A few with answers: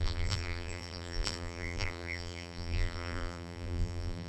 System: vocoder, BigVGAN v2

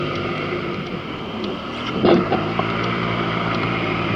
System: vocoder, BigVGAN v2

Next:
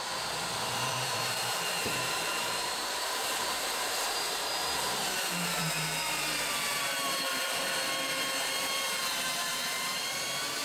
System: vocoder, BigVGAN v2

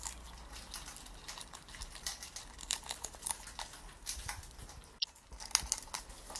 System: none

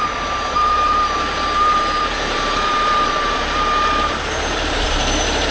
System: vocoder, BigVGAN v2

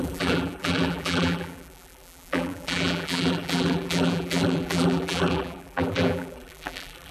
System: vocoder, BigVGAN v2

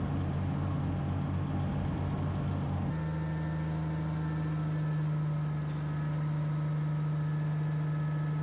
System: none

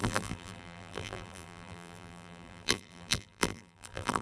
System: vocoder, BigVGAN v2